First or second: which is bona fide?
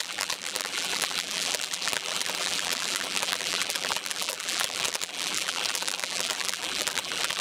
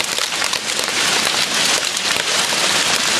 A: second